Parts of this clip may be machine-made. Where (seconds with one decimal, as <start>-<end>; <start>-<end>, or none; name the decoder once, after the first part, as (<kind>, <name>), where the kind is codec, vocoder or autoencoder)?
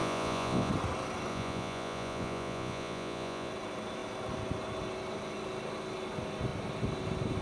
0.0-0.7 (vocoder, Vocos); 1.3-3.5